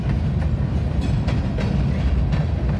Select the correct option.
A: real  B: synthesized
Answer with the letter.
A